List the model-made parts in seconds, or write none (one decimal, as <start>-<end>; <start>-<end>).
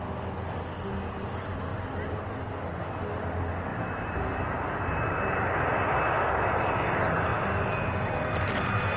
1.7-2.5; 3.7-5.2